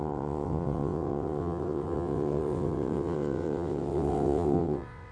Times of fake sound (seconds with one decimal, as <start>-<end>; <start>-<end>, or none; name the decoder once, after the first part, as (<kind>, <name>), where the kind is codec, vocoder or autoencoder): 0.0-5.1 (vocoder, WaveNeXt)